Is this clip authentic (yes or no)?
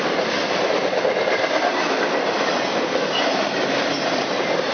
yes